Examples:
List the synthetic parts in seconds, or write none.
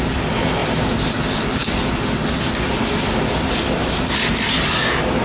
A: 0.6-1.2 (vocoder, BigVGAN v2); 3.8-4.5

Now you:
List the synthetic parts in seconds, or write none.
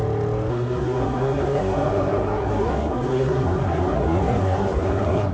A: 0.5-5.3 (codec, SNAC)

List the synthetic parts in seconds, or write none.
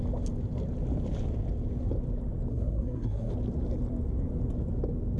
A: 2.5-3.3 (codec, SNAC)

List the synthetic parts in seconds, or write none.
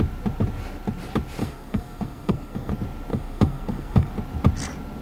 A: 1.4-2.7 (codec, SNAC); 3.1-4.1